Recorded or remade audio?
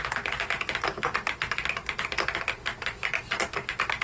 recorded